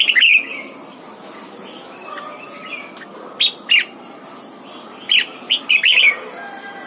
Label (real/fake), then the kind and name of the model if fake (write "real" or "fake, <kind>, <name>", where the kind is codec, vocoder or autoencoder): real